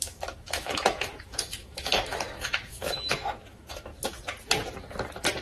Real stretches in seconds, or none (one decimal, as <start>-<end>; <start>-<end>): 3.9-5.4